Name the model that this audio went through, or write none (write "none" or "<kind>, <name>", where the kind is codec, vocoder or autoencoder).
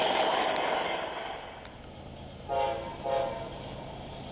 none